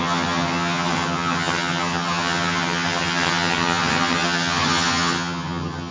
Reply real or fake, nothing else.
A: fake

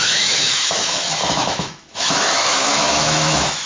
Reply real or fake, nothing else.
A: fake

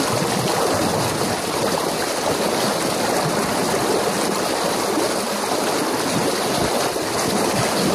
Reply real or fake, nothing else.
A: real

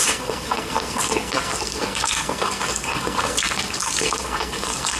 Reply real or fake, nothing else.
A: fake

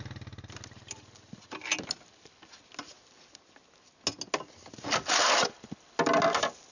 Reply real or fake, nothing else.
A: real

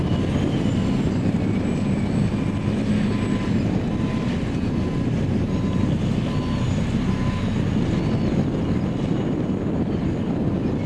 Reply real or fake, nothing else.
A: real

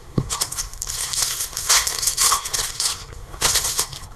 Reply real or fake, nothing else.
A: fake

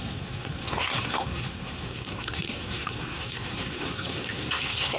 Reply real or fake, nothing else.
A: fake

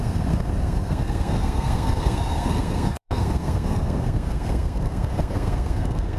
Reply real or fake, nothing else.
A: fake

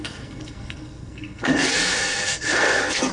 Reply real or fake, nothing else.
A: fake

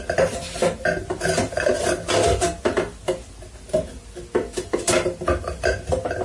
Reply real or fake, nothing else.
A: real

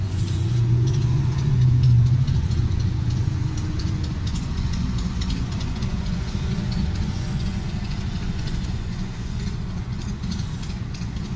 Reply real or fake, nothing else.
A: fake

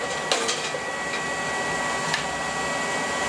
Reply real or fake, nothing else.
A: real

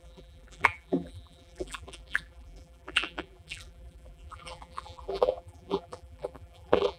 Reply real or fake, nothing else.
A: fake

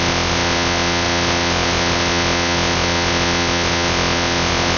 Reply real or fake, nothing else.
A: fake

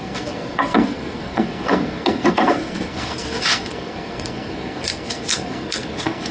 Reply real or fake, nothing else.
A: fake